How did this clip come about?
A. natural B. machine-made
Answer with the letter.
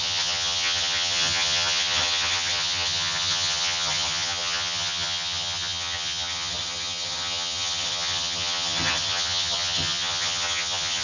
B